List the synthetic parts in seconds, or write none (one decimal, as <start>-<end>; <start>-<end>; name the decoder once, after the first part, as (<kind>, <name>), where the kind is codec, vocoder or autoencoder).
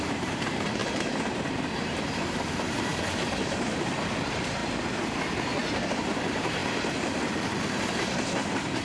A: 0.0-0.8 (vocoder, BigVGAN v2); 1.5-2.9; 4.1-4.6; 5.9-6.6; 8.2-8.8